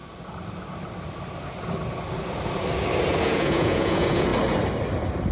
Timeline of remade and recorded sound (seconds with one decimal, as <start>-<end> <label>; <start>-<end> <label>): 0.0-3.2 recorded; 3.2-4.3 remade; 4.3-5.3 recorded